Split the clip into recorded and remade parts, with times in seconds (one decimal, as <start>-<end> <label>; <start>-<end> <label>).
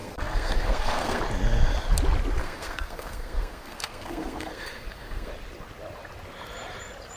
0.0-1.2 remade; 1.2-2.4 recorded; 2.4-5.3 remade; 5.3-7.2 recorded